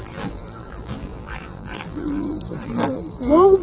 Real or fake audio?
fake